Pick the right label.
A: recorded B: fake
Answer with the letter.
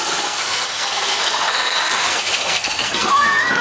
B